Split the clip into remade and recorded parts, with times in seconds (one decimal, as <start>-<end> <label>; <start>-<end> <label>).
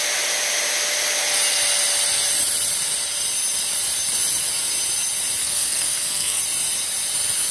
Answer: 0.0-5.4 recorded; 5.4-6.4 remade; 6.4-7.5 recorded